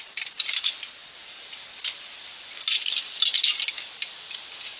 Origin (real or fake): real